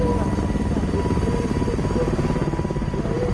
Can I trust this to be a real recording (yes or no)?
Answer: yes